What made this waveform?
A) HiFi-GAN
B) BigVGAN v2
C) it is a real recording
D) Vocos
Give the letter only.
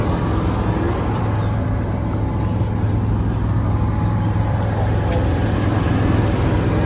C